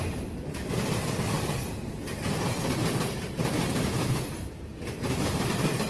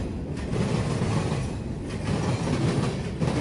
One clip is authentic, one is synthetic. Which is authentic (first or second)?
second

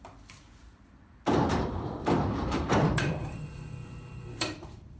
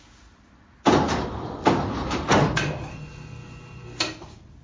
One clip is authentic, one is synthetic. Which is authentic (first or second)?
second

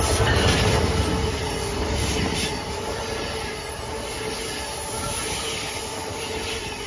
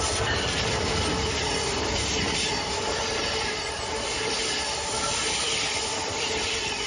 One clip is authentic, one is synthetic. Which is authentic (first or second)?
first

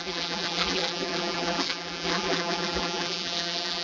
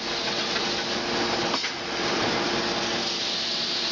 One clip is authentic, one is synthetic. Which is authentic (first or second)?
second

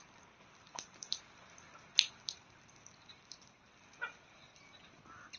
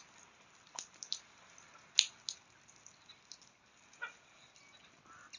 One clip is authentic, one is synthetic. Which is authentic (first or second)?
second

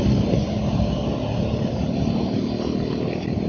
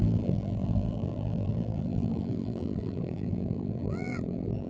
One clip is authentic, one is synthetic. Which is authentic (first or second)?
first